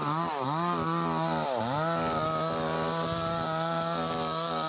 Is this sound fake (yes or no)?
no